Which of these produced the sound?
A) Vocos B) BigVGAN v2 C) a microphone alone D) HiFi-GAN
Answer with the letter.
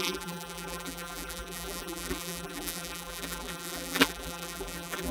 B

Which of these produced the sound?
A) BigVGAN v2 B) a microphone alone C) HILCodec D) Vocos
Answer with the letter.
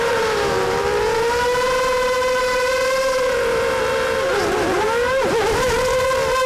A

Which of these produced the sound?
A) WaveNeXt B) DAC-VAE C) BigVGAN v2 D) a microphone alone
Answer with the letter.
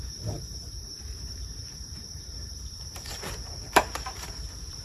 C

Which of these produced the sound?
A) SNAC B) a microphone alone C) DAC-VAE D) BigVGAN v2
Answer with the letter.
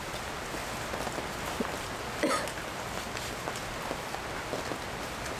B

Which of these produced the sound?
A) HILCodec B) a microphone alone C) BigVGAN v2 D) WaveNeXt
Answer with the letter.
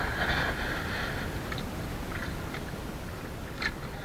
B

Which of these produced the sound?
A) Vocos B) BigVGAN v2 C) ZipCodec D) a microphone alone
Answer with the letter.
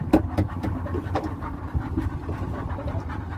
D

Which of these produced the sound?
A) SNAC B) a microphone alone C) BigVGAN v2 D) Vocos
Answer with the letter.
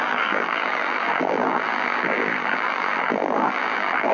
C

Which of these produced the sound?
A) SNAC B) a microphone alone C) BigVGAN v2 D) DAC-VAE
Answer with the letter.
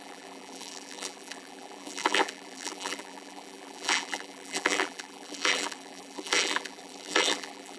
C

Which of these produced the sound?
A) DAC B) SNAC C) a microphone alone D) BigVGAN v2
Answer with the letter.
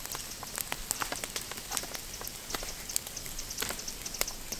C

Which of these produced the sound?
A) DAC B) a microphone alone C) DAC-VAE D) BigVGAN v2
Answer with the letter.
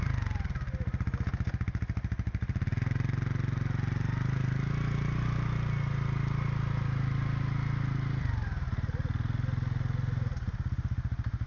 B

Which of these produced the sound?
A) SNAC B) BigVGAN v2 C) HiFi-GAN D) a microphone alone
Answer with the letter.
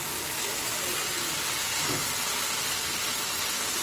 D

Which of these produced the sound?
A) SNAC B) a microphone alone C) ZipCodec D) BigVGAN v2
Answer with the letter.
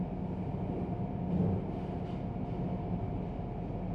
B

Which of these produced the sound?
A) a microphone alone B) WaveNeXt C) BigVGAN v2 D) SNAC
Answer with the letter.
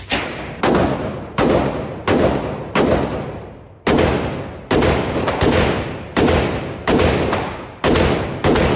A